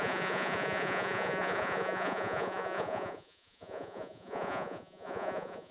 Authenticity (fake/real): fake